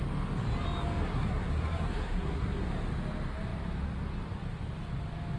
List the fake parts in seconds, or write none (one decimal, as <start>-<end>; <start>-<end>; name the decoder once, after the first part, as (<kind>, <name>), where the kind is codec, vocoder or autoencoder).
1.0-2.7 (codec, SNAC)